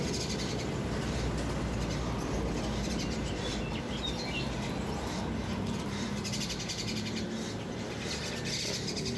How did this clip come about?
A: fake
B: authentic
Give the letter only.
B